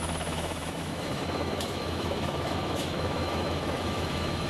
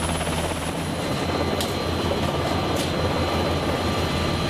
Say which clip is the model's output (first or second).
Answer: first